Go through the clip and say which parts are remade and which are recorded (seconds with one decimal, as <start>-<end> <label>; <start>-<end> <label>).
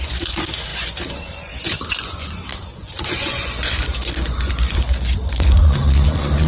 0.0-6.5 remade